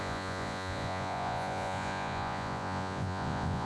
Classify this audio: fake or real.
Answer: fake